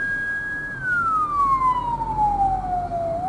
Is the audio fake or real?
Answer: real